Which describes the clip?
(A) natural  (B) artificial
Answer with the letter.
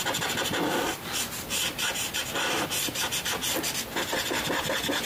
B